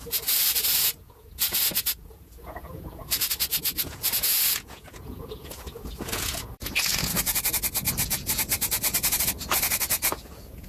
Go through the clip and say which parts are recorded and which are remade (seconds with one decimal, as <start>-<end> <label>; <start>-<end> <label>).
0.0-10.7 remade